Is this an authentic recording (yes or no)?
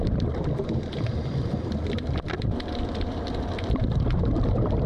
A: no